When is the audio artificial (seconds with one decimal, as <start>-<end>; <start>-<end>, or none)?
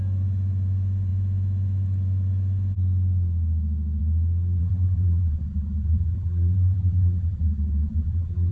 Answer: 4.6-8.5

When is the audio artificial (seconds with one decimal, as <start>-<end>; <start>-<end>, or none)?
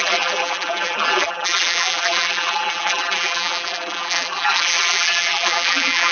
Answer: 0.0-6.1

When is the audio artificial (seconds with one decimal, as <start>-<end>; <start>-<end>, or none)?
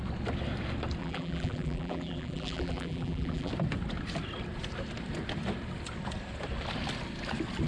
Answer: 1.0-3.5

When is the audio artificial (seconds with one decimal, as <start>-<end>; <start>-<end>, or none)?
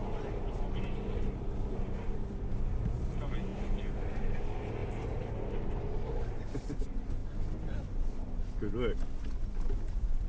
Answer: 4.8-6.8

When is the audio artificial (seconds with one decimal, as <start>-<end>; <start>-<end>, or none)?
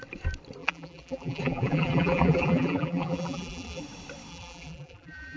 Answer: 0.6-3.8; 4.3-5.4